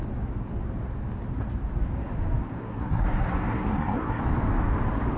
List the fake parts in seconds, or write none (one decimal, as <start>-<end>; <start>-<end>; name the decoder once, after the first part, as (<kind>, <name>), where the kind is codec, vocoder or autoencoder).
2.6-4.2 (codec, SNAC)